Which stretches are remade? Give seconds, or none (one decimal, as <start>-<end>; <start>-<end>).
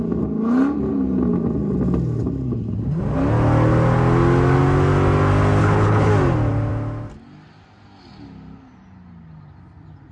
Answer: 5.6-6.1